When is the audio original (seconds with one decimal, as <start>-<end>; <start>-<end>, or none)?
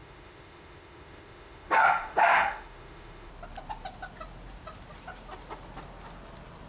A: 3.3-6.7